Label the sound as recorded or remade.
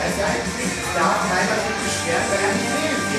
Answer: recorded